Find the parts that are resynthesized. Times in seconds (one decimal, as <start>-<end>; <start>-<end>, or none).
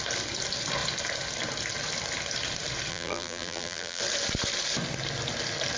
2.9-4.0